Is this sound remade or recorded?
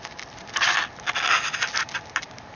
recorded